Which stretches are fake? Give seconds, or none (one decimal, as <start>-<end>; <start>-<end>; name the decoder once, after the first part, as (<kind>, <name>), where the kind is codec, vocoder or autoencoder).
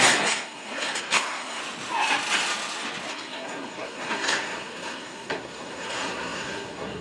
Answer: 0.0-1.6 (codec, SNAC); 3.1-7.0